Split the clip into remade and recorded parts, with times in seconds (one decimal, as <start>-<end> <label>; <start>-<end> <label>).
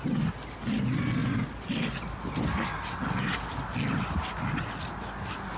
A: 0.0-5.6 recorded